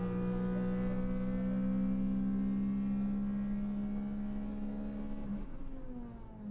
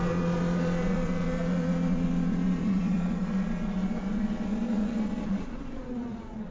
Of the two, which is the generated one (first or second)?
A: second